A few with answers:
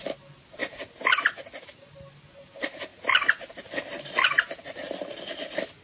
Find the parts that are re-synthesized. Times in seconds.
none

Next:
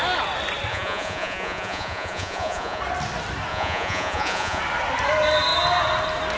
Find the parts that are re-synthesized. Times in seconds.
0.7-2.8 (vocoder, Vocos); 3.5-4.6

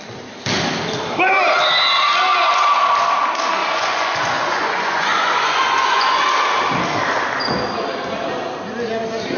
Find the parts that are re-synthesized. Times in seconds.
3.6-6.2 (vocoder, Vocos)

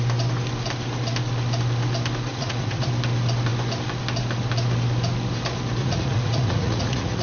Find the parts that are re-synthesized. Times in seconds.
2.3-2.9 (vocoder, Vocos); 5.8-7.2

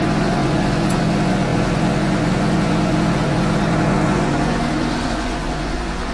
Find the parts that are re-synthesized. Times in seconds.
0.0-6.1 (vocoder, Vocos)

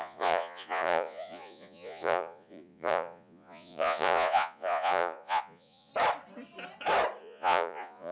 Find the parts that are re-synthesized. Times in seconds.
0.0-5.9 (vocoder, Vocos); 7.2-8.1